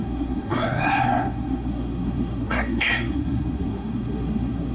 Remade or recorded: remade